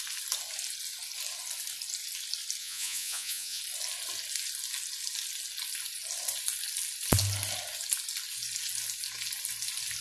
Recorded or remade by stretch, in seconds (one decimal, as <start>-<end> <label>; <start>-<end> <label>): 0.0-2.6 recorded; 2.6-3.6 remade; 3.6-10.0 recorded